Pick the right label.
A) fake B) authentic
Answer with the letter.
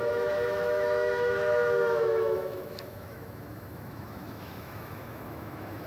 A